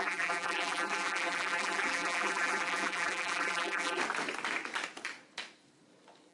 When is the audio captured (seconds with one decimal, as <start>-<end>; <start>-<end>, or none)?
4.0-6.3